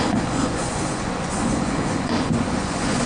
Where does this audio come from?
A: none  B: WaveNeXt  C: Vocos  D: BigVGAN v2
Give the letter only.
C